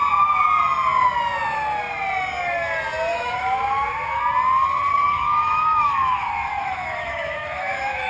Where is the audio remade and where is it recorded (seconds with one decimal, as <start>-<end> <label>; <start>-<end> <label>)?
0.0-3.1 recorded; 3.1-4.2 remade; 4.2-4.9 recorded; 4.9-8.1 remade